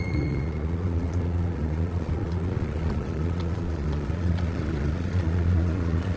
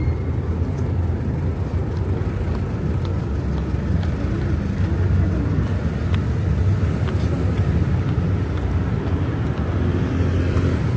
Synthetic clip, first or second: first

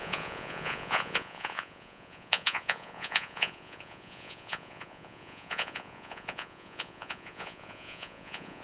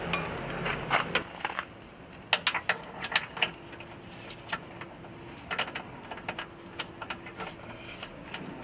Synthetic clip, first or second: first